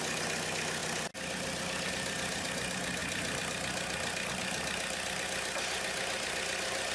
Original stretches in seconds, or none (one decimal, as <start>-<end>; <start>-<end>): 0.0-6.9

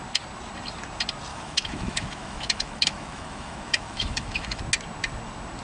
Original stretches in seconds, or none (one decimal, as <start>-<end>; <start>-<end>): 0.0-1.3; 4.6-5.6

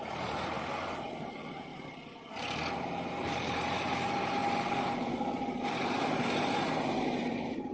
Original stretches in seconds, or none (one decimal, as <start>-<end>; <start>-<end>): 1.7-2.7; 4.4-7.0

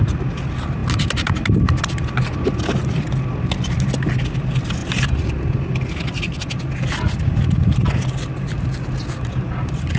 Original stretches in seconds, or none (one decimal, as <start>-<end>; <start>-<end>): 0.0-10.0

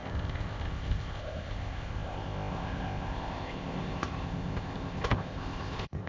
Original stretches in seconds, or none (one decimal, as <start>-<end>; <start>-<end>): none

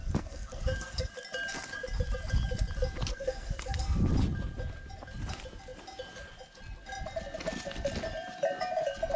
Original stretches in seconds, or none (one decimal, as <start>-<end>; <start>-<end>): 1.1-3.1; 4.1-9.2

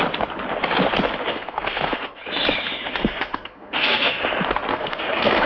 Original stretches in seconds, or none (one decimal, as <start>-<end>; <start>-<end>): 0.0-1.3; 2.2-2.9; 4.2-4.7